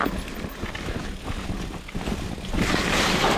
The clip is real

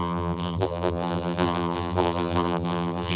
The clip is fake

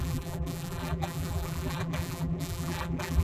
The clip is fake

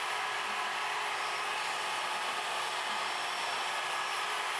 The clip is fake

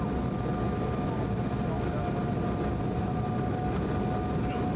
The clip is real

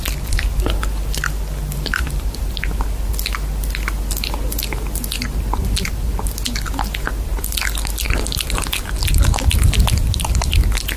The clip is real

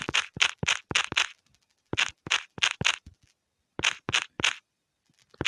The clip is real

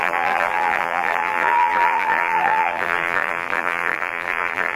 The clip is fake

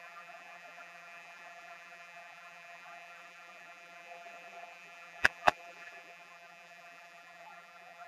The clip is fake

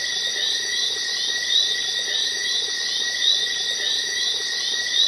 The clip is real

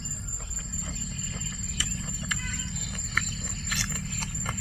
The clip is real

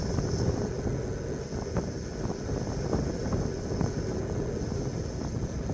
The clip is real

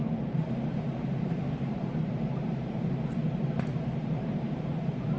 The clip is fake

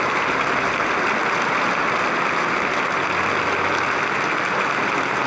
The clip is real